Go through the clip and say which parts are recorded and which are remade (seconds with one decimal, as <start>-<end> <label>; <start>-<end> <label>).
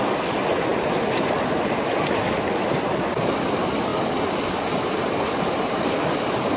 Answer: 0.0-6.6 recorded